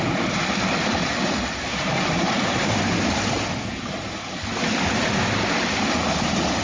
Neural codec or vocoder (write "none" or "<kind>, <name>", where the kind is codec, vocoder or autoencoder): none